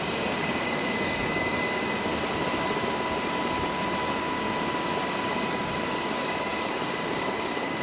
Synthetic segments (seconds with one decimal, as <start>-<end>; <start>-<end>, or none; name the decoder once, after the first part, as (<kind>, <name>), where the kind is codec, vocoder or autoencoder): 0.0-2.1 (codec, DAC); 5.2-7.8